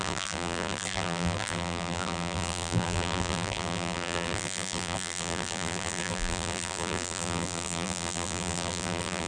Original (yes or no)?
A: no